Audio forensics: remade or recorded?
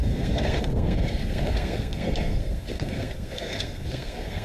remade